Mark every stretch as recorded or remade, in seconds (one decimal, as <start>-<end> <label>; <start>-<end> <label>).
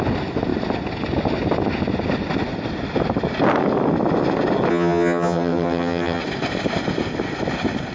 0.0-4.7 recorded; 4.7-6.2 remade; 6.2-7.9 recorded